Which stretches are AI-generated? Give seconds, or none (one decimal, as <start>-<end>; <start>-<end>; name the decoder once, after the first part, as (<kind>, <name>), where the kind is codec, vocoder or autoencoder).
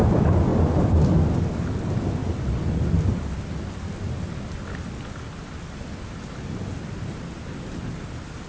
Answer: none